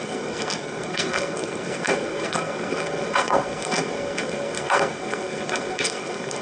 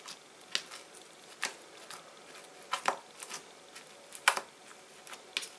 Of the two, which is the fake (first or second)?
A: first